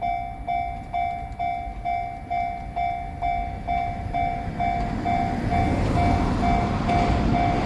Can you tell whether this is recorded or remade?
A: recorded